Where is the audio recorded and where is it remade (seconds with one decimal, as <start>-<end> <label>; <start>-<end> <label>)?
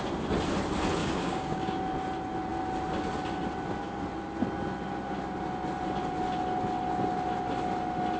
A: 0.0-1.0 recorded; 1.0-1.8 remade; 1.8-8.2 recorded